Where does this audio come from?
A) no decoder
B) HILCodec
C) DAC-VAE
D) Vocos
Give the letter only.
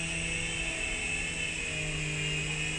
A